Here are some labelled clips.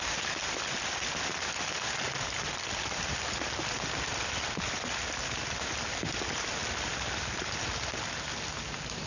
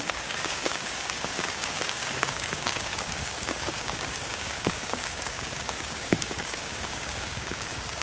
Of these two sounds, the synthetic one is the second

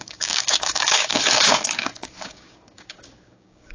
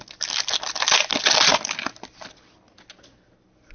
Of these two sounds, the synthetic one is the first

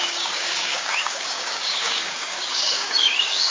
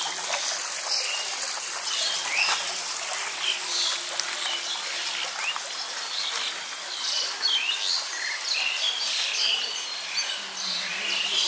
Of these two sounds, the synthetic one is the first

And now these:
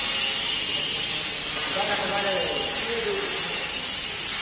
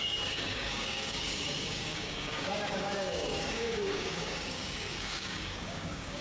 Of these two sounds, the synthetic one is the second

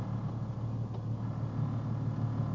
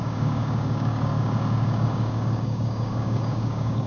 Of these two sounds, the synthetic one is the second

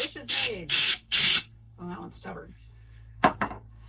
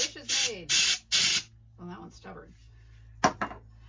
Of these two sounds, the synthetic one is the first